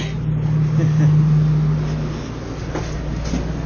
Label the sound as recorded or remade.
recorded